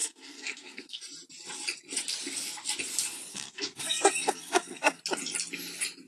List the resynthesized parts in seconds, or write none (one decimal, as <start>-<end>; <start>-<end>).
0.0-1.0; 3.3-5.0